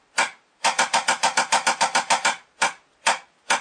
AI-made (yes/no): no